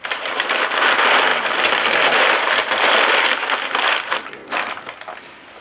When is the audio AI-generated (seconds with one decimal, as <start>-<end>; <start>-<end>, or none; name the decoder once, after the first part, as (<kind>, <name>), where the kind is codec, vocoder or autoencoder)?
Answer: none